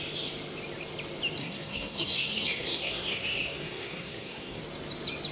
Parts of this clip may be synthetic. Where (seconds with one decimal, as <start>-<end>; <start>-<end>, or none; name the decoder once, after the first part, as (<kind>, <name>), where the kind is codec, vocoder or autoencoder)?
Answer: 1.4-4.6 (codec, SNAC)